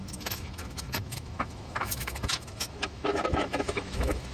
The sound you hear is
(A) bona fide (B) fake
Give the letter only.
B